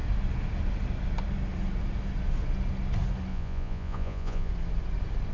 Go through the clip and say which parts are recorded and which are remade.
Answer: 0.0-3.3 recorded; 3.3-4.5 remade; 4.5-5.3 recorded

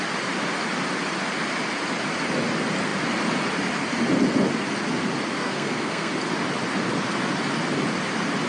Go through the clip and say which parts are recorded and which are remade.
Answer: 0.0-5.4 recorded; 5.4-6.1 remade; 6.1-8.5 recorded

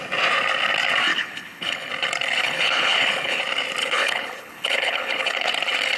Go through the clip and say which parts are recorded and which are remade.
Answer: 0.0-1.1 recorded; 1.1-1.9 remade; 1.9-2.4 recorded; 2.4-3.4 remade; 3.4-3.8 recorded; 3.8-5.5 remade; 5.5-6.0 recorded

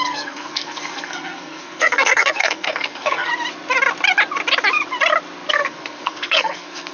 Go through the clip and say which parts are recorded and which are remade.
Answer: 0.0-3.3 remade; 3.3-5.5 recorded; 5.5-6.9 remade

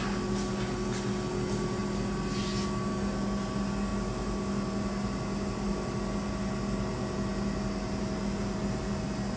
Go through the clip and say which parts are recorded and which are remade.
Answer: 0.0-9.4 recorded